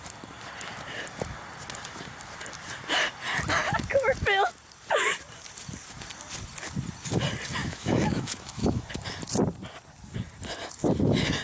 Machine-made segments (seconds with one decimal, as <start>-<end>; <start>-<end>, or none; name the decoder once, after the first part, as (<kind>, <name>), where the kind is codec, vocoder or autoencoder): 7.6-8.9 (autoencoder, DAC-VAE)